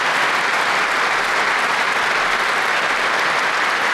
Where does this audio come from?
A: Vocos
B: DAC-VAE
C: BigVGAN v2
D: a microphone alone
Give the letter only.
D